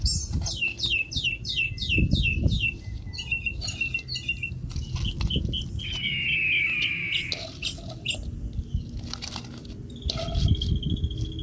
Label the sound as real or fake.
real